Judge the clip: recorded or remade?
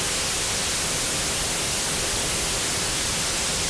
recorded